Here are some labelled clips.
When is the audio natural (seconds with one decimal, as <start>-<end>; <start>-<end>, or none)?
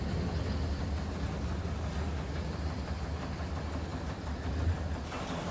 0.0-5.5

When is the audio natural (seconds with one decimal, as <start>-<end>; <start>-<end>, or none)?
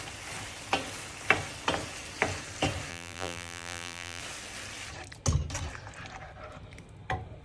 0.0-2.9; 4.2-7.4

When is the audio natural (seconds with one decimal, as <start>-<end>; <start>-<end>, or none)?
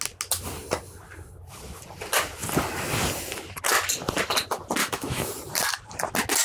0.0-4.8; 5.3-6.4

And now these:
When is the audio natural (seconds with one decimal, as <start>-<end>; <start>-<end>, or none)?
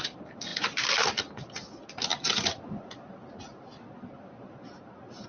0.0-5.3